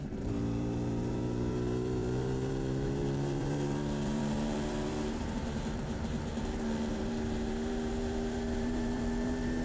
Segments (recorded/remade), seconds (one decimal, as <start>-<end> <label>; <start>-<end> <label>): 0.0-6.3 remade; 6.3-6.9 recorded; 6.9-9.6 remade